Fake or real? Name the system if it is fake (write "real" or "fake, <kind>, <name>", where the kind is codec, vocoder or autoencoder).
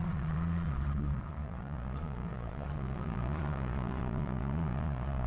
fake, vocoder, Vocos